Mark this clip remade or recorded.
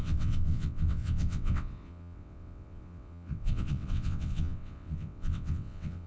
remade